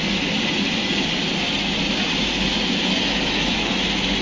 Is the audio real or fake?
real